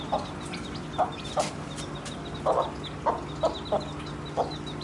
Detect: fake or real real